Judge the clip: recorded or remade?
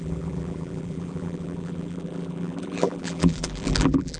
remade